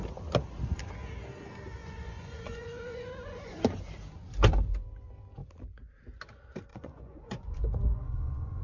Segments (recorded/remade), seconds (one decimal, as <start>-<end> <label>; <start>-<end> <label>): 0.0-1.8 recorded; 1.8-3.6 remade; 3.6-6.7 recorded; 6.7-8.6 remade